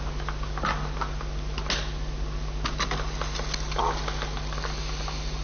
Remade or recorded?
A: recorded